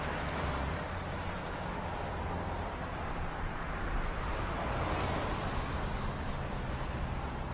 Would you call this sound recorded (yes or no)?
yes